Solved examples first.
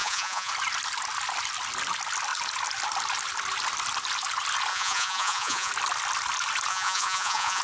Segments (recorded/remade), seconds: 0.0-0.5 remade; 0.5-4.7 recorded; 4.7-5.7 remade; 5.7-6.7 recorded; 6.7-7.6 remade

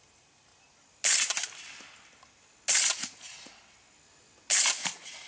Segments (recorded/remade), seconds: 0.0-3.0 recorded; 3.0-3.5 remade; 3.5-4.8 recorded; 4.8-5.3 remade

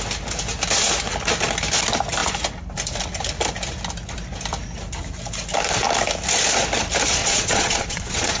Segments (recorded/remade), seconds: 0.0-7.2 recorded; 7.2-8.4 remade

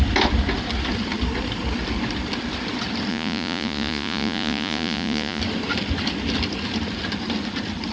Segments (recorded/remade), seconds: 0.0-3.1 recorded; 3.1-5.4 remade; 5.4-7.9 recorded

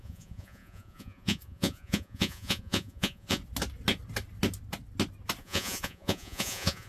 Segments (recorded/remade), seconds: 0.0-3.4 remade; 3.4-5.4 recorded; 5.4-6.9 remade

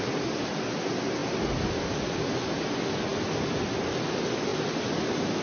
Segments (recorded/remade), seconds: 0.0-5.4 recorded